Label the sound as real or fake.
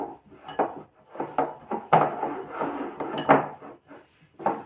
fake